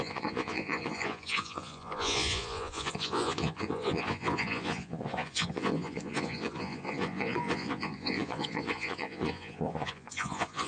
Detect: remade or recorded remade